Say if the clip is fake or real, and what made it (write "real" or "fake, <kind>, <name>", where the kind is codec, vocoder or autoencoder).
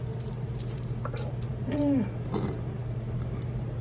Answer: fake, vocoder, BigVGAN v2